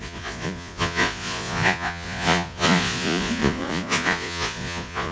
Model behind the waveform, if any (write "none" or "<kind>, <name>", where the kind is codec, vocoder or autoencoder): vocoder, Vocos